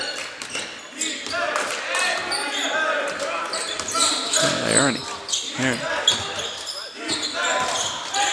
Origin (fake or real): real